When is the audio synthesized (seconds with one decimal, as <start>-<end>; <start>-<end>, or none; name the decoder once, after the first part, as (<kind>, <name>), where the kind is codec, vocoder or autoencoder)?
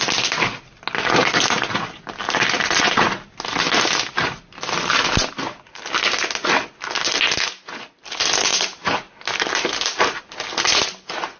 none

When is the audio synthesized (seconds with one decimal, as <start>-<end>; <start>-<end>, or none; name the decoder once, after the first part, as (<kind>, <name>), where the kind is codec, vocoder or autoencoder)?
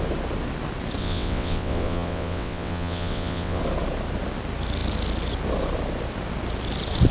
1.0-3.6 (vocoder, WaveNeXt)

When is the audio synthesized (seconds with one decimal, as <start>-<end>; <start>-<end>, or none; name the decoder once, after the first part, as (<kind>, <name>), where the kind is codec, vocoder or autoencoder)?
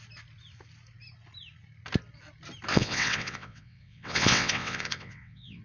2.7-5.6 (vocoder, WaveNeXt)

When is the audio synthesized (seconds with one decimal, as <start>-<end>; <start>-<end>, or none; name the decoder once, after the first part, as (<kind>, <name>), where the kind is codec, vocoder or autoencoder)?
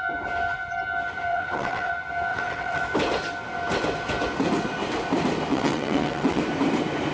1.3-1.9 (vocoder, WaveNeXt); 2.3-2.8; 5.5-6.4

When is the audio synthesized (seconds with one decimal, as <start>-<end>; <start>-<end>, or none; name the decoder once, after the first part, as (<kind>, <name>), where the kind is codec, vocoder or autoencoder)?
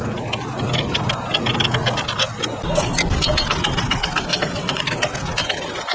4.3-4.8 (vocoder, WaveNeXt)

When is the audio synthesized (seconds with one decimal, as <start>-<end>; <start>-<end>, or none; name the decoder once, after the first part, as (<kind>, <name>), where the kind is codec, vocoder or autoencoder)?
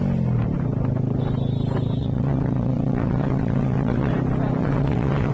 2.0-4.1 (vocoder, WaveNeXt); 4.6-5.3